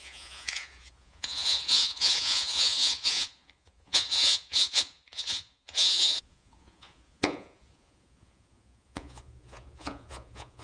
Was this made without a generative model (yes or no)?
no